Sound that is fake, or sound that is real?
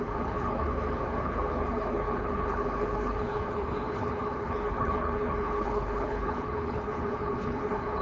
fake